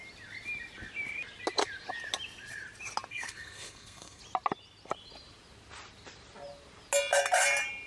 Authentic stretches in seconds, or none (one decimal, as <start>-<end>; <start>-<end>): 0.0-3.1; 4.2-7.9